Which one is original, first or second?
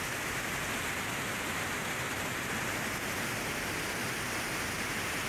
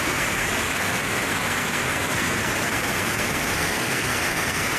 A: first